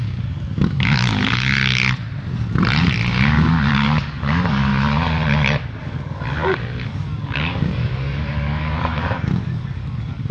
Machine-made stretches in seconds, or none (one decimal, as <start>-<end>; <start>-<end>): 0.0-1.6; 3.7-4.7; 5.8-10.3